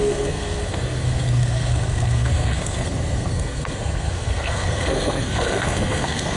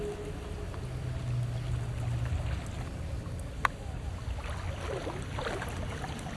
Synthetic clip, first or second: first